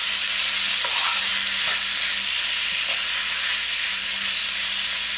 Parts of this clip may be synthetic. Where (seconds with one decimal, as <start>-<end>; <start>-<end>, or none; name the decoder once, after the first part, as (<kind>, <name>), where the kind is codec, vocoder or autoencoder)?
none